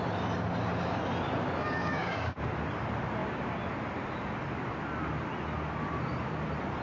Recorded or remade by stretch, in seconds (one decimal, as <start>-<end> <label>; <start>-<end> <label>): 0.0-1.8 recorded; 1.8-2.5 remade; 2.5-6.8 recorded